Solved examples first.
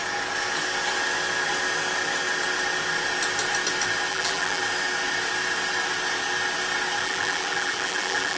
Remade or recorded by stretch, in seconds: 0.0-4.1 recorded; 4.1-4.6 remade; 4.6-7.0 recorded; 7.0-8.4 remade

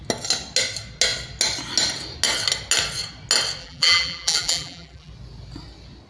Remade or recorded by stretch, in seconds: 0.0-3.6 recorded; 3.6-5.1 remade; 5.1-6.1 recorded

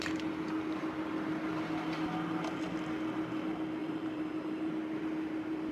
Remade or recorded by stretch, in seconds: 0.0-3.8 recorded; 3.8-4.7 remade; 4.7-5.7 recorded

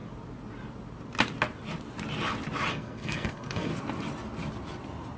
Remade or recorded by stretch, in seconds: 0.0-2.7 recorded; 2.7-3.7 remade; 3.7-5.2 recorded